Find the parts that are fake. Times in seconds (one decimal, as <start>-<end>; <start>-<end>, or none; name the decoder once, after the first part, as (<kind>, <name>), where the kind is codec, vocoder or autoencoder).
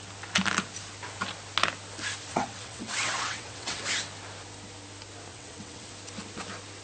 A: 2.3-3.8 (vocoder, WaveNeXt); 5.3-5.9